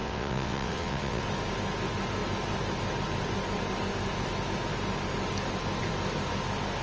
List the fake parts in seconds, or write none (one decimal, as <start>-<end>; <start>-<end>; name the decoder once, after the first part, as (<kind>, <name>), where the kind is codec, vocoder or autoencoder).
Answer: 0.0-1.2 (vocoder, WaveNeXt)